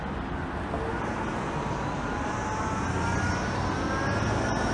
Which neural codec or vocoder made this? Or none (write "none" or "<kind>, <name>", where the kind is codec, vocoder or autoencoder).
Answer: none